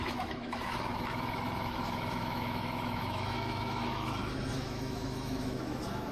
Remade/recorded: remade